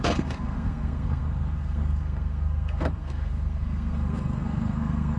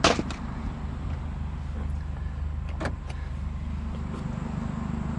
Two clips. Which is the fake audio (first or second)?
first